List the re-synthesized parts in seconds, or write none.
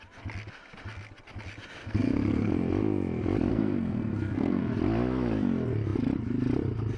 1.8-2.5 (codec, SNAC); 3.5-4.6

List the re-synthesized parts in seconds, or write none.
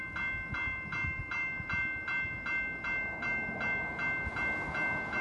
none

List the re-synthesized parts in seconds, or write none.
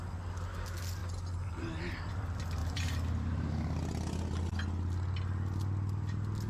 2.6-3.5 (vocoder, BigVGAN v2)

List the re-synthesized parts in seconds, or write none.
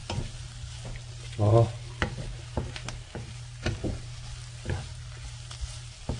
none